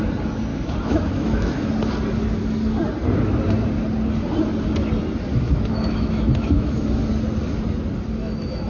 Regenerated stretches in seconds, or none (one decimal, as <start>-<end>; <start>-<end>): 0.5-1.7; 5.3-7.0; 8.2-8.7